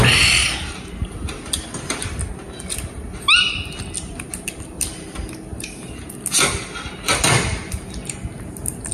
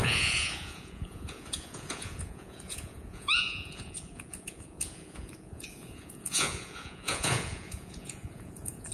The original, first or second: first